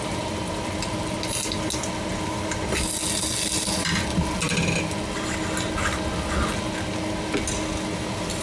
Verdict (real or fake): real